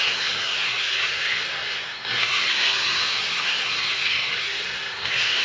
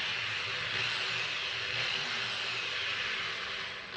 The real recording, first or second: second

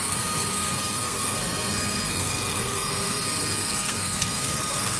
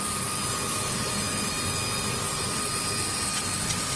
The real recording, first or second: second